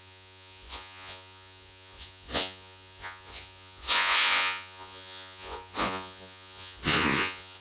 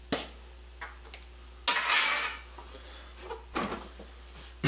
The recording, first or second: second